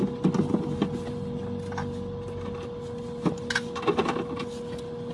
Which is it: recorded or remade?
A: recorded